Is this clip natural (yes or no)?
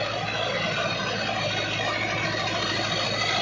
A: yes